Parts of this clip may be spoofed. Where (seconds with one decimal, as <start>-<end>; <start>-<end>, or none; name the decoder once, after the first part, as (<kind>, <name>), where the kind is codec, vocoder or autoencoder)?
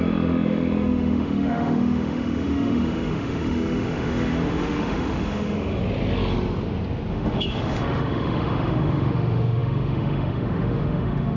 0.0-5.8 (autoencoder, DAC-VAE); 7.1-11.4